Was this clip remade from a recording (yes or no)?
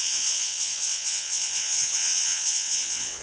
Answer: yes